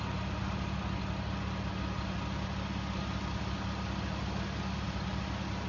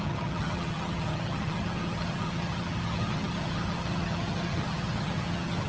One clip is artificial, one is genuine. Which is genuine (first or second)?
first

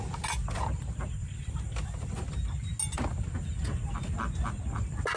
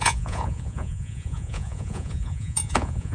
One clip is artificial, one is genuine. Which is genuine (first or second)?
first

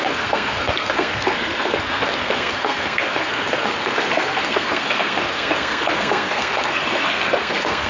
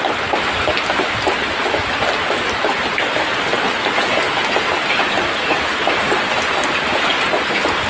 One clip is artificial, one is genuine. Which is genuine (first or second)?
second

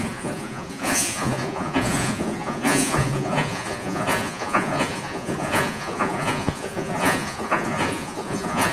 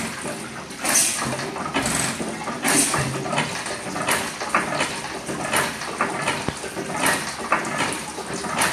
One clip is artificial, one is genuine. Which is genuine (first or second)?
second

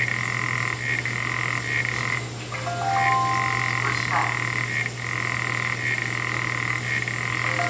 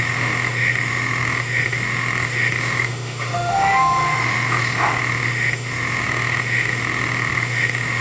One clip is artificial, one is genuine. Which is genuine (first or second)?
first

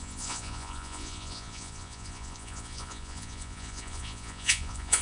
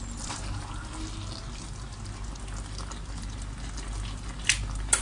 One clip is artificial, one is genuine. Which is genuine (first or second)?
second